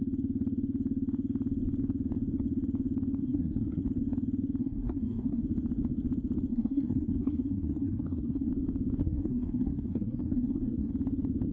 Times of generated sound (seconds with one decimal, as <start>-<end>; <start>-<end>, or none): 3.2-3.8; 4.6-5.4; 6.5-8.5; 9.0-10.9